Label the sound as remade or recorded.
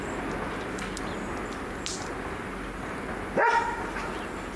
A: recorded